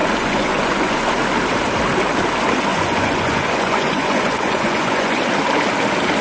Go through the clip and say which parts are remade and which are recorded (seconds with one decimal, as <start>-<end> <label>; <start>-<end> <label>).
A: 0.0-1.1 remade; 1.1-2.7 recorded; 2.7-5.2 remade; 5.2-6.2 recorded